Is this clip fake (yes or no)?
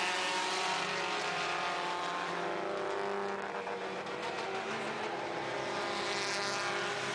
no